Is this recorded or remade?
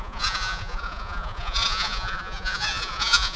remade